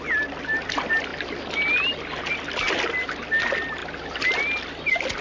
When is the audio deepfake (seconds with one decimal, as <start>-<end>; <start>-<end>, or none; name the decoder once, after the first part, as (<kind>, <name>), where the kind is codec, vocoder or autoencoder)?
none